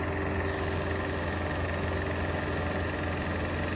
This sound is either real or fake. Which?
real